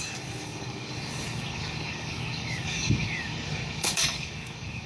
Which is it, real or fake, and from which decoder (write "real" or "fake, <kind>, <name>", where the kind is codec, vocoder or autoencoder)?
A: fake, codec, DAC